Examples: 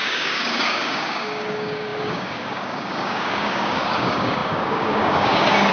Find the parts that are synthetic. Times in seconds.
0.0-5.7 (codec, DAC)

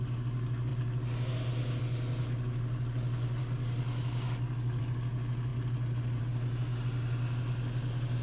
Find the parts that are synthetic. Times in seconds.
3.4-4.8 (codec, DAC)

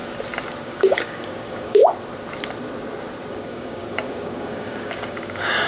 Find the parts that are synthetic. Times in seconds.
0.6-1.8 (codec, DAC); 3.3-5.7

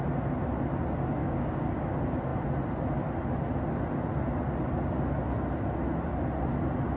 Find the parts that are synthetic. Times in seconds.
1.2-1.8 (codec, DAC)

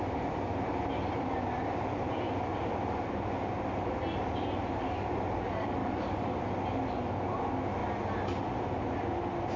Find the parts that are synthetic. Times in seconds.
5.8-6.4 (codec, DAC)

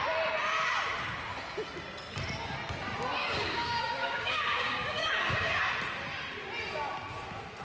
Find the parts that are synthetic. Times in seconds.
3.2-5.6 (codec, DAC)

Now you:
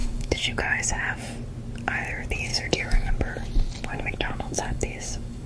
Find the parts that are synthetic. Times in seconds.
0.0-0.8 (codec, DAC); 2.5-3.1; 3.9-5.5